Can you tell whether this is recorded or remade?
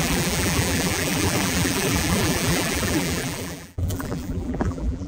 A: remade